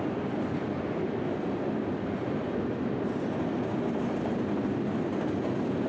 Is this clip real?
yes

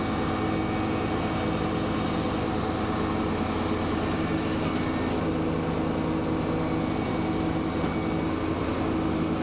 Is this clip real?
yes